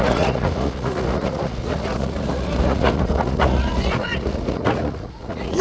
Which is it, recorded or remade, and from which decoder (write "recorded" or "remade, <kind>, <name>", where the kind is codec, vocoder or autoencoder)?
remade, vocoder, Vocos